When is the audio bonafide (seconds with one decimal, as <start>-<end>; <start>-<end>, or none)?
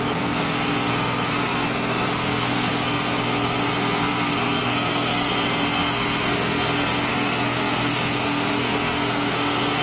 none